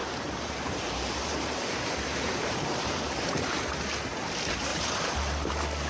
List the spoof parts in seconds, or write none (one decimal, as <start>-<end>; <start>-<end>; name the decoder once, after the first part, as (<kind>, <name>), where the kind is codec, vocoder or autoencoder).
0.0-3.5 (vocoder, BigVGAN v2); 4.7-5.5